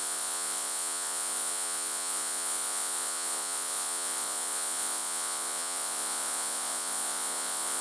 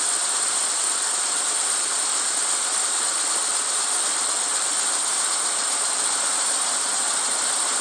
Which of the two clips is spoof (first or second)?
first